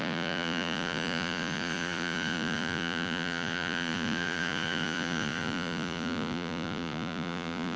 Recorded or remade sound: remade